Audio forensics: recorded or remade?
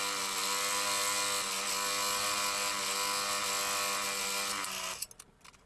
recorded